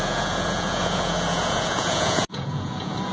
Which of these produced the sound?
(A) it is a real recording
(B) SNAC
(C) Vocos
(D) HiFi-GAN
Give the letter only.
C